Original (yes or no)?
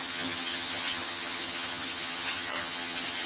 no